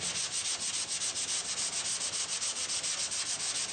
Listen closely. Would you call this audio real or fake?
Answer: real